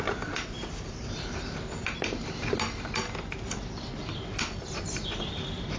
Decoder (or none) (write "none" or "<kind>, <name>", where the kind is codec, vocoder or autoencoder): none